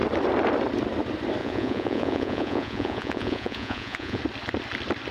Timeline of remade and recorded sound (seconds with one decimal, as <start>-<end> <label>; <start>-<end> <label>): 0.0-1.4 recorded; 1.4-4.2 remade; 4.2-5.1 recorded